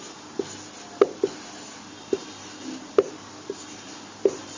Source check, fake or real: real